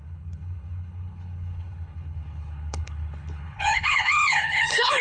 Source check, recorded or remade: remade